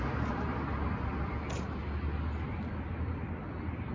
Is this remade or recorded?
recorded